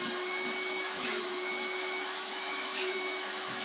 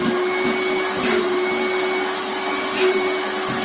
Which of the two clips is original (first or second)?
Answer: second